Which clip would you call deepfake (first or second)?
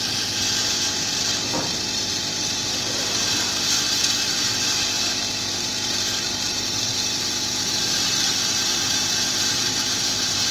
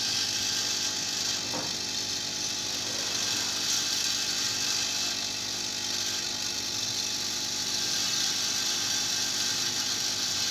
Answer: first